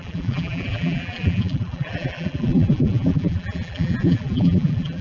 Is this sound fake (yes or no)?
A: yes